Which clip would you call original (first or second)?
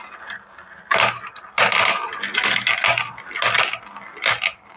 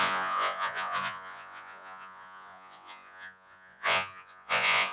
first